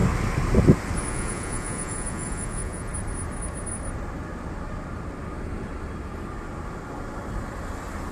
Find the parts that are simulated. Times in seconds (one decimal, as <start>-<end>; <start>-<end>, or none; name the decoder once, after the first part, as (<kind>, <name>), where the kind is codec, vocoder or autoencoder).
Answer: 1.1-2.9 (vocoder, Vocos)